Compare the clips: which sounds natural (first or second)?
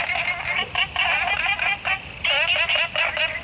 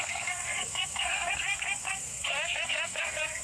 first